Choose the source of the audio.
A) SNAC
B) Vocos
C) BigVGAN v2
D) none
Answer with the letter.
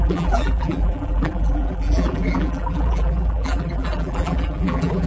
C